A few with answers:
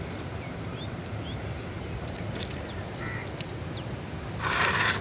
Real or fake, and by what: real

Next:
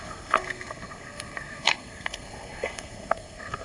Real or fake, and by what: fake, codec, SNAC